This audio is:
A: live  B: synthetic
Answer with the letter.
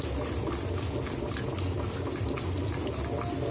A